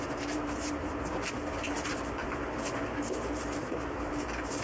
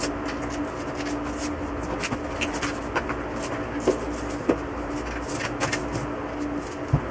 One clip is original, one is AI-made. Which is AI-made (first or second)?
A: first